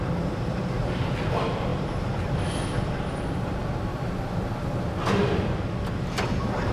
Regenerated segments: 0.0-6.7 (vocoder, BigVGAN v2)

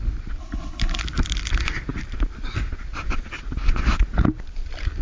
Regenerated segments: 0.4-1.0 (codec, HILCodec)

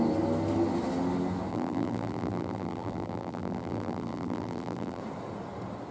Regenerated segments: 1.5-5.0 (vocoder, BigVGAN v2)